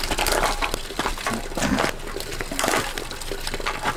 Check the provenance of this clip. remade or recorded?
recorded